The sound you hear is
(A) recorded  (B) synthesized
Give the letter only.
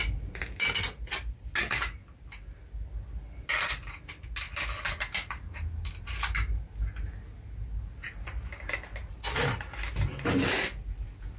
A